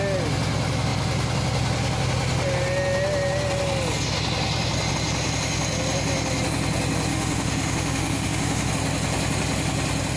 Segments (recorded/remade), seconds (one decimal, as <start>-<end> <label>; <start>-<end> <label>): 0.0-7.1 recorded; 7.1-8.7 remade; 8.7-10.2 recorded